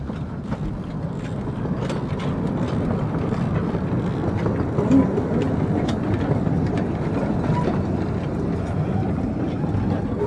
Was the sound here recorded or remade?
recorded